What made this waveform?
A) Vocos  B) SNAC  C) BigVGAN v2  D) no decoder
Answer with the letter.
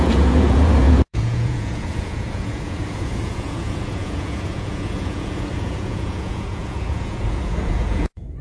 A